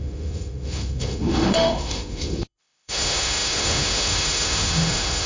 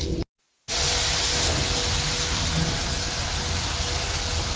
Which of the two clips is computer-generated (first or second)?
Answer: first